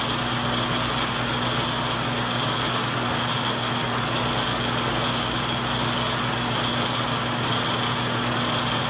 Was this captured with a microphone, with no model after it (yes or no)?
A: yes